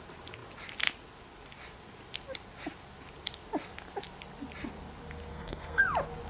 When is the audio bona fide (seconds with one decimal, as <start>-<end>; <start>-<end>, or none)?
0.0-5.3; 5.8-6.3